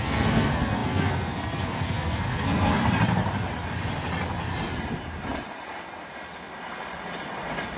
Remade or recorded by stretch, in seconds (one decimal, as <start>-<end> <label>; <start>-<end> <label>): 0.0-2.8 remade; 2.8-7.8 recorded